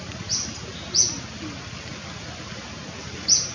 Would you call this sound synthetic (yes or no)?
no